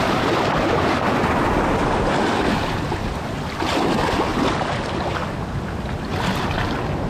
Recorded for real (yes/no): yes